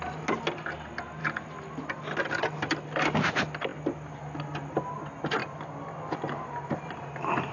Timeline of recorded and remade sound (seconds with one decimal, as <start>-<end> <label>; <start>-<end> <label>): 0.0-7.5 recorded